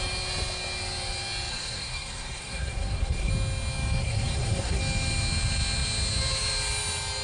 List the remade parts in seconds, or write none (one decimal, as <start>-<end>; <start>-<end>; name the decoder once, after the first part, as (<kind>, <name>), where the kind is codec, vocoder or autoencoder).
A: 1.5-3.3 (codec, SNAC); 4.0-4.8